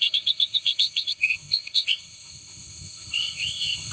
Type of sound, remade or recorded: remade